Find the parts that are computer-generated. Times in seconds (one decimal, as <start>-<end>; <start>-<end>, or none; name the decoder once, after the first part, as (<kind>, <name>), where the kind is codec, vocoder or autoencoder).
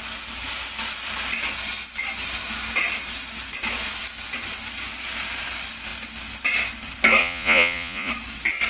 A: 7.2-8.1 (vocoder, Vocos)